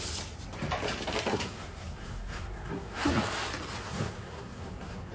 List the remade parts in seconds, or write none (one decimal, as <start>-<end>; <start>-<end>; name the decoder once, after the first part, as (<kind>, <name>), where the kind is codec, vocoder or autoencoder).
1.3-3.1 (codec, SNAC); 3.8-5.1